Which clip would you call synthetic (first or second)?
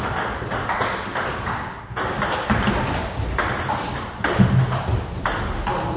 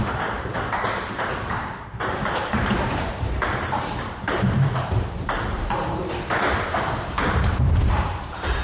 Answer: second